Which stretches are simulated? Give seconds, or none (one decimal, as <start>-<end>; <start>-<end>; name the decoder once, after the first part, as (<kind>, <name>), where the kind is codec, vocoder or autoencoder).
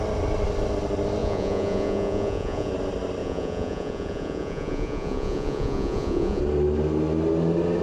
1.2-2.7 (vocoder, Vocos); 3.2-6.4